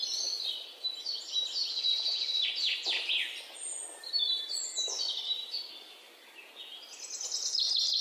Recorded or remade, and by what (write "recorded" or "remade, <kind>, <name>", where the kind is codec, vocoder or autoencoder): recorded